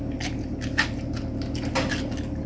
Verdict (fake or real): real